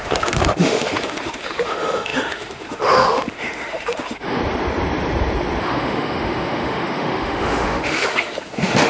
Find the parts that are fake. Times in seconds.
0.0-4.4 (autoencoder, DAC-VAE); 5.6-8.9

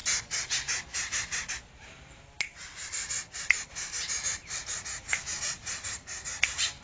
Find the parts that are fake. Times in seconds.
none